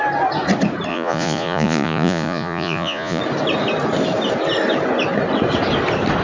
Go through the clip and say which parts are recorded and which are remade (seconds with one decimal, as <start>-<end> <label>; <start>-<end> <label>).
0.0-0.9 recorded; 0.9-3.2 remade; 3.2-6.2 recorded